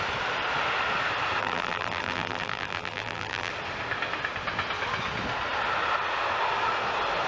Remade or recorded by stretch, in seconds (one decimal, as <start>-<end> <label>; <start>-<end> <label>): 0.0-1.4 recorded; 1.4-3.5 remade; 3.5-7.3 recorded